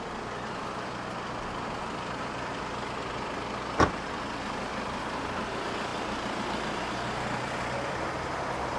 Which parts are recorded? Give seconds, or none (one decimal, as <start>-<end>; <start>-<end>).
0.0-8.8